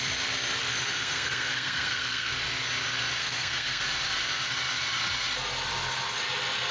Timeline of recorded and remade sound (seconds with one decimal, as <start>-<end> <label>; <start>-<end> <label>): 0.0-0.6 recorded; 0.6-2.3 remade; 2.3-3.2 recorded; 3.2-3.8 remade; 3.8-6.7 recorded

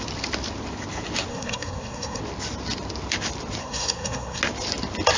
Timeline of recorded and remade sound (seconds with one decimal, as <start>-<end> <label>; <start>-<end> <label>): 0.0-1.3 recorded; 1.3-2.2 remade; 2.2-3.6 recorded; 3.6-4.4 remade; 4.4-5.2 recorded

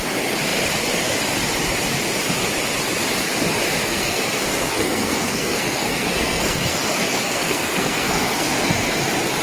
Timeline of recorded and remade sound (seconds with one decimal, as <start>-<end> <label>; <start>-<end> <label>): 0.0-3.8 recorded; 3.8-9.0 remade; 9.0-9.4 recorded

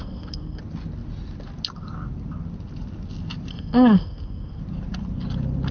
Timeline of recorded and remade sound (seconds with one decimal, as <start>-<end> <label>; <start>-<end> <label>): 0.0-0.6 remade; 0.6-3.5 recorded; 3.5-4.6 remade; 4.6-5.7 recorded

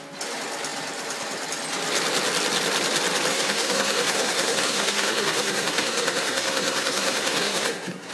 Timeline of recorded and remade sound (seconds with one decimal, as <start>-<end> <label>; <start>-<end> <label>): 0.0-3.3 recorded; 3.3-8.1 remade

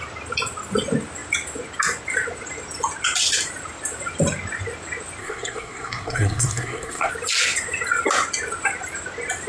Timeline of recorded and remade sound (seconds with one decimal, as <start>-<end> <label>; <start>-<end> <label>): 0.0-5.2 recorded; 5.2-7.1 remade; 7.1-9.5 recorded

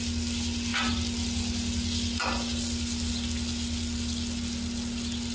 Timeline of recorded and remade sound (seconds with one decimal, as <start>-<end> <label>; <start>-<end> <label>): 0.0-5.3 recorded